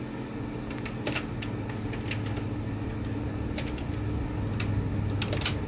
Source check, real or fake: real